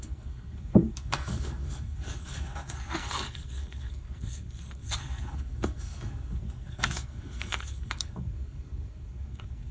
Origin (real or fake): fake